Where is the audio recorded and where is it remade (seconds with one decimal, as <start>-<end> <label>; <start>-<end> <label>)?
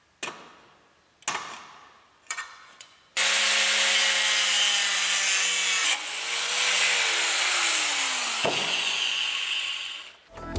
0.0-2.1 recorded; 2.1-3.4 remade; 3.4-5.8 recorded; 5.8-6.5 remade; 6.5-8.4 recorded; 8.4-10.0 remade; 10.0-10.6 recorded